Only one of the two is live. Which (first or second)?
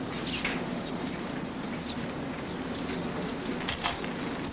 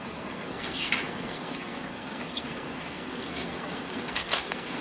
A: first